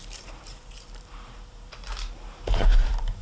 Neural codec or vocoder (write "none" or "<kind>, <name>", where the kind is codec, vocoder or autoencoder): vocoder, BigVGAN v2